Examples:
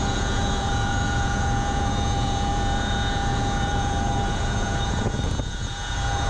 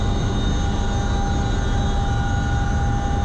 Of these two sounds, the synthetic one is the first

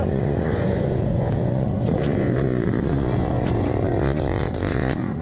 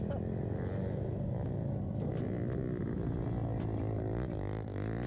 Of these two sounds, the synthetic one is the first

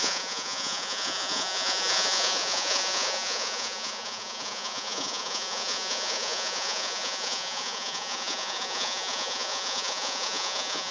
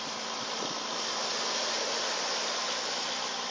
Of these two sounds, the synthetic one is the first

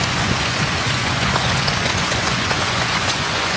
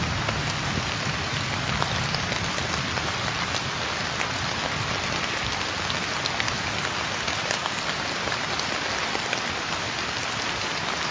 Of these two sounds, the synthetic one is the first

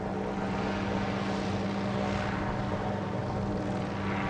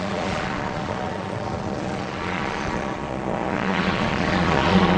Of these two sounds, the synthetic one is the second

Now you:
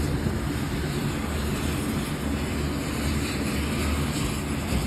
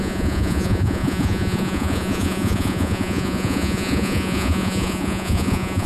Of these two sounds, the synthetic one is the second